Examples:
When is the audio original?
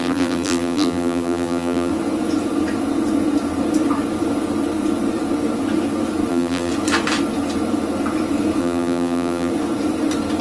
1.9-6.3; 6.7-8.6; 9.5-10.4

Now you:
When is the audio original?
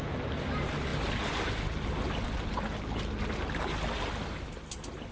0.0-5.1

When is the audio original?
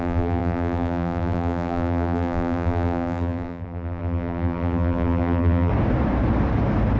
5.7-7.0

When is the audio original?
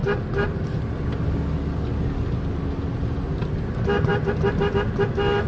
0.0-5.5